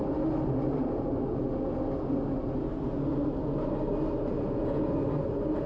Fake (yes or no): no